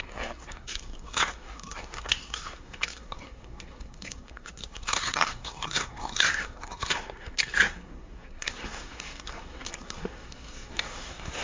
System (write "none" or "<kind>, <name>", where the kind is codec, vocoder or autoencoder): codec, SNAC